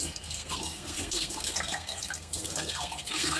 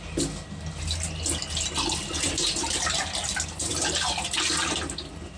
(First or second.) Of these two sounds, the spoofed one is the first